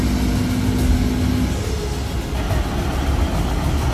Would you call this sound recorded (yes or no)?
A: yes